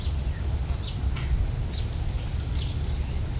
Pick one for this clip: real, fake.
real